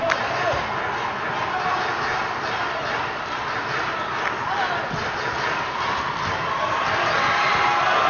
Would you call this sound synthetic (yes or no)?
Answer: no